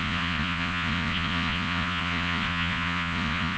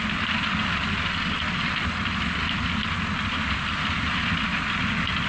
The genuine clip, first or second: second